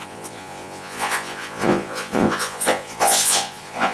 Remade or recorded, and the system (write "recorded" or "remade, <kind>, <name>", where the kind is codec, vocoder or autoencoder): remade, vocoder, Vocos